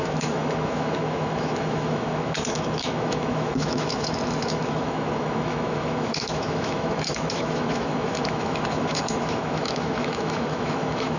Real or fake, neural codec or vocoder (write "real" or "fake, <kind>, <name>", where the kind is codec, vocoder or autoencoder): fake, autoencoder, DAC-VAE